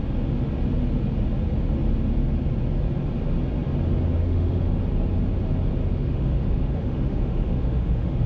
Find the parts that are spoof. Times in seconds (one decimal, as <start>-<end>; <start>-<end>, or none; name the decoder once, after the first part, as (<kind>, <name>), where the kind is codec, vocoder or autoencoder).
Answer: 4.2-4.8 (autoencoder, DAC-VAE); 5.9-8.3